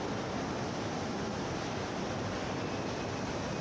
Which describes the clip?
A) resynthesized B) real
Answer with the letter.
B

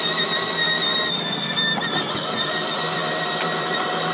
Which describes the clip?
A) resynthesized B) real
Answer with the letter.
A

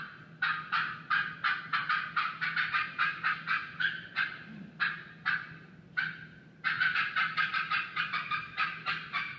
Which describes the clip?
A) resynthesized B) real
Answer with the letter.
B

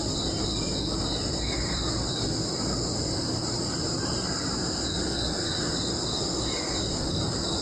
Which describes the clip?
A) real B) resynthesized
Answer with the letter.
B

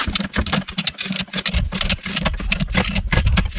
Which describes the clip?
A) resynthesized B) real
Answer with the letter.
B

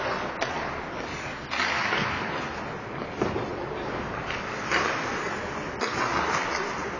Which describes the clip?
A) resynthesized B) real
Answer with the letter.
B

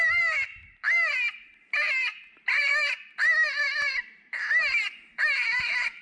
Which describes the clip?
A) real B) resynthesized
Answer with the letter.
B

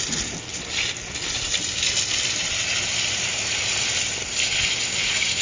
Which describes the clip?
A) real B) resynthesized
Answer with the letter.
A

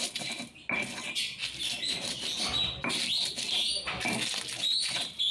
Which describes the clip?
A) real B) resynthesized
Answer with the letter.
A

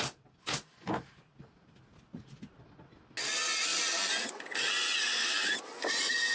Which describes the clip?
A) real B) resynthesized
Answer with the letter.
A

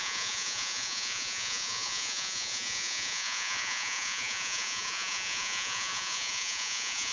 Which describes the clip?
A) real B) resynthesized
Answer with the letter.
B